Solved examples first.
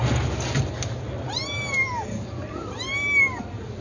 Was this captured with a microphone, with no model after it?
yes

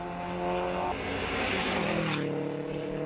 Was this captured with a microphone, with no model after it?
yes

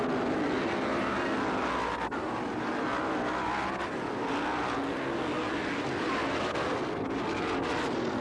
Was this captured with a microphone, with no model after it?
yes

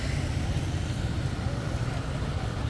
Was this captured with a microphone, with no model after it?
yes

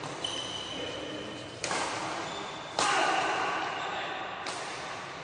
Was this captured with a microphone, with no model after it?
yes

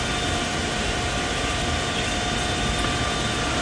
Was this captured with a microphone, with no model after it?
yes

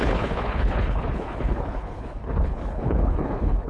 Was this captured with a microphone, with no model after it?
no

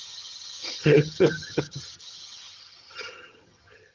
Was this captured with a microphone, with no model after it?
no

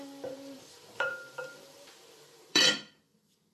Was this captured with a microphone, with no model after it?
no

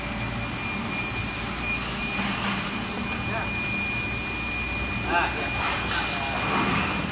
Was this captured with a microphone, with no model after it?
yes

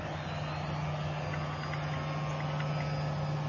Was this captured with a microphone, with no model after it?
yes